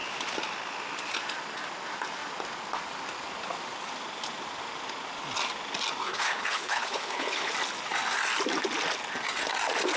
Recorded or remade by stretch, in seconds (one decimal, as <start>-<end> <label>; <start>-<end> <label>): 0.0-6.0 recorded; 6.0-7.5 remade; 7.5-10.0 recorded